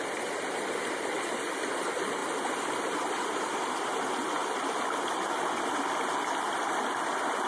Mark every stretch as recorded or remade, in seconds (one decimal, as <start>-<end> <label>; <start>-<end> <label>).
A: 0.0-7.5 recorded

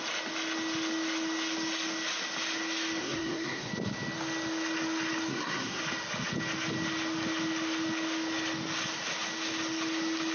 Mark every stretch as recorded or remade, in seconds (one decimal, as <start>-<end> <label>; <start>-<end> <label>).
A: 0.0-3.0 recorded; 3.0-3.7 remade; 3.7-5.3 recorded; 5.3-5.8 remade; 5.8-10.3 recorded

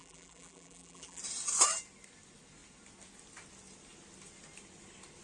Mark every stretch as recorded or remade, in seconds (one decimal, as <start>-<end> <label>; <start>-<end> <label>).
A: 0.0-1.2 remade; 1.2-5.2 recorded

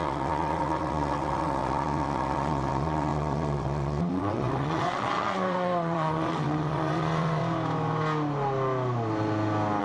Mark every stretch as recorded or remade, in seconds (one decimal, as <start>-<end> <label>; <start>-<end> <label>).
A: 0.0-7.4 remade; 7.4-9.8 recorded

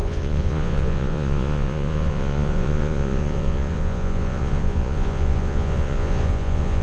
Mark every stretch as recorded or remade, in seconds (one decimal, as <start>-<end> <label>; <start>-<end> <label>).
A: 0.0-6.8 remade

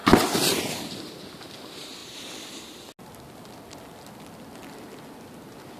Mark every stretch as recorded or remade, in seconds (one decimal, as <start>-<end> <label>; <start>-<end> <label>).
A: 0.0-2.0 recorded; 2.0-2.9 remade; 2.9-5.8 recorded